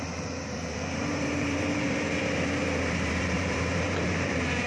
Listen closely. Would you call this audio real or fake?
fake